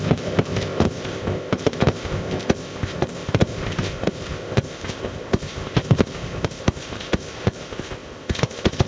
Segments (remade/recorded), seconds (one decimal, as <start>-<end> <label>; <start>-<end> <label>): 0.0-8.9 remade